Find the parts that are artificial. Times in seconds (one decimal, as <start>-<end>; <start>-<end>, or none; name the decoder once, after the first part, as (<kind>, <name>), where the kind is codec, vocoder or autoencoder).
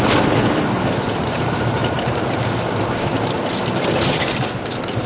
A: 0.0-5.1 (vocoder, BigVGAN v2)